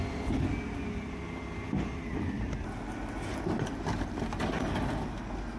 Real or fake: real